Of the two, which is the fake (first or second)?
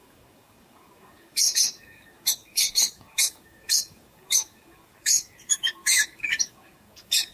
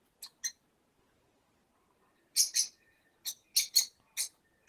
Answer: first